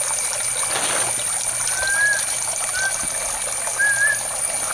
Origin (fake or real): real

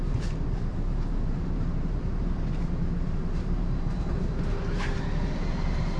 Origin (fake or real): fake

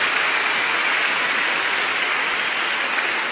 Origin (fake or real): real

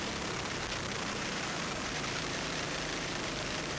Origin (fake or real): fake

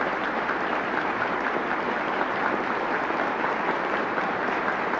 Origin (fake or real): real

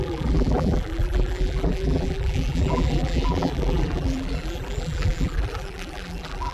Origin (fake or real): fake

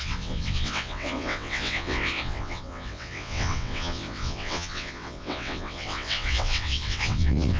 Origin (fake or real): fake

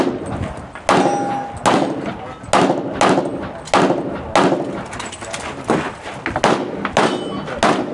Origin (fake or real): real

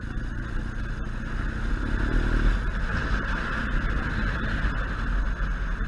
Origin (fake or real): real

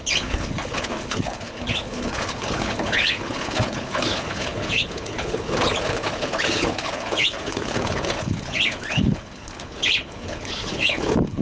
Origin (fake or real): fake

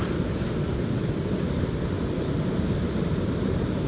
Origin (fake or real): real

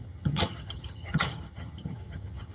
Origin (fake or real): fake